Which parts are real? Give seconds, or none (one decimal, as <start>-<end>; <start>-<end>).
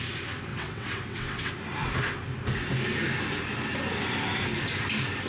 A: 0.0-0.5; 1.5-5.3